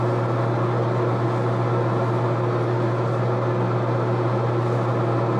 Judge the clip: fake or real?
real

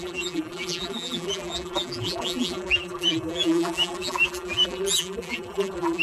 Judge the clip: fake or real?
fake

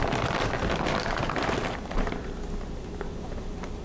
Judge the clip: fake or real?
real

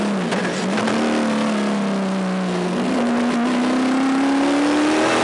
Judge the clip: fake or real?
real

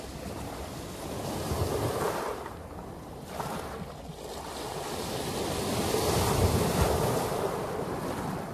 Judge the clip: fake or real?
fake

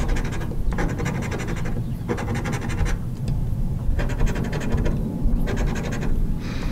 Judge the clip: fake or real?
real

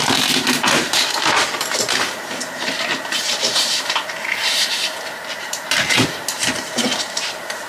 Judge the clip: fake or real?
fake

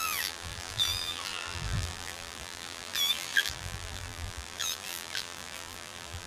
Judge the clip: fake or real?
fake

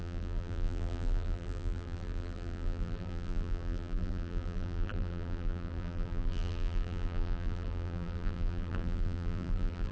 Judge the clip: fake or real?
fake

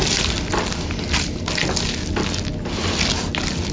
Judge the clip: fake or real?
real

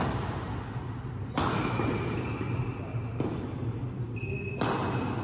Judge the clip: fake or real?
real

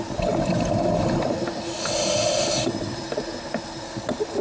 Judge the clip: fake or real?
real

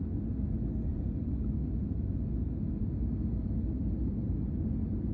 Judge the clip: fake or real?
real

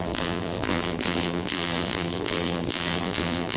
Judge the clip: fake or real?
fake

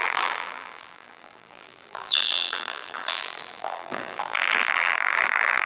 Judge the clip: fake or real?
fake